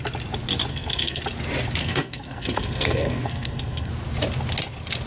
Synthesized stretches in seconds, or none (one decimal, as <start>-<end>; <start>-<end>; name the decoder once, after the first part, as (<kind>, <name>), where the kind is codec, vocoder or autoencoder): 0.7-1.2 (codec, SNAC); 1.8-3.9